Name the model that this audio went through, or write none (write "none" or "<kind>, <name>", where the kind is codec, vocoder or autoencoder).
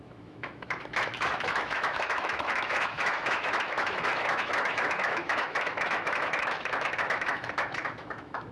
autoencoder, DAC-VAE